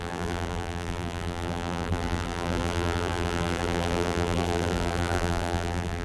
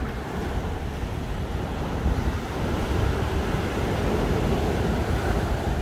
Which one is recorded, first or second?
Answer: second